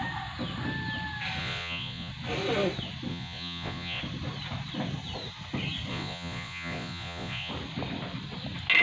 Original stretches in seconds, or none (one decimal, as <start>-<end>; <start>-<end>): 0.0-1.4; 2.1-3.1; 4.0-5.9; 7.5-8.8